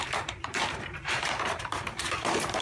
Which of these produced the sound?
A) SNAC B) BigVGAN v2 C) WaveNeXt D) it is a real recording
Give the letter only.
B